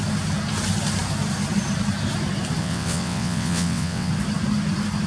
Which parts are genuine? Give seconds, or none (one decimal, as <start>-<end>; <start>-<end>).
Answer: 0.0-2.6; 4.1-5.1